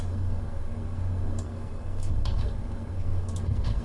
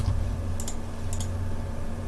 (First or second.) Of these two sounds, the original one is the second